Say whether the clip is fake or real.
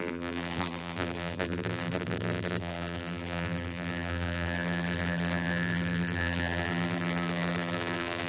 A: fake